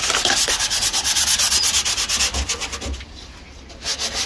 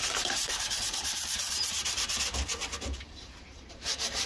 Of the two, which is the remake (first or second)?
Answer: second